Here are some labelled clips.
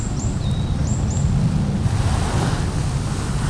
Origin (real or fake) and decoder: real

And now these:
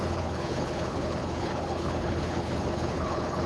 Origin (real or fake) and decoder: fake, codec, HILCodec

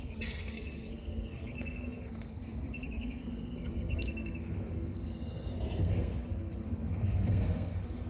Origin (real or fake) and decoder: fake, codec, SNAC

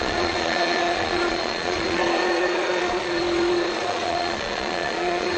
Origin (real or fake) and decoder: fake, vocoder, Vocos